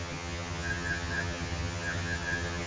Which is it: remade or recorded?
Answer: remade